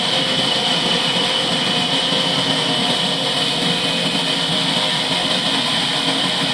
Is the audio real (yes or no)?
yes